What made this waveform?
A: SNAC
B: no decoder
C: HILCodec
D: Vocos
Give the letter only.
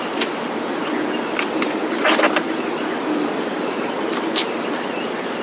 B